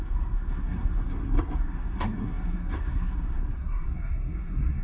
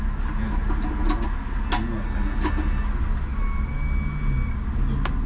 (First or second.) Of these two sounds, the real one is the second